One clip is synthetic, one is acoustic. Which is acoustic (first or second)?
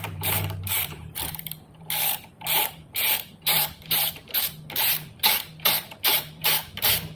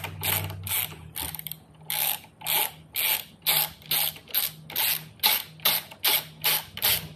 second